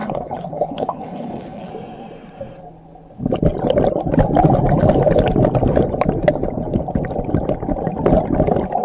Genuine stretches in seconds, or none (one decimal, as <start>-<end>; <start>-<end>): 1.7-8.8